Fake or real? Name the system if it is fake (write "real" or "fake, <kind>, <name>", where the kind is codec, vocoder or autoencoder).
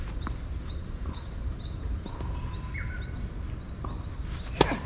real